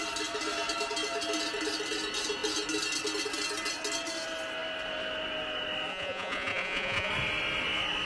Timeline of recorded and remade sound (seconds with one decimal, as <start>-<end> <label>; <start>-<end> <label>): 0.0-5.9 recorded; 5.9-7.1 remade; 7.1-8.1 recorded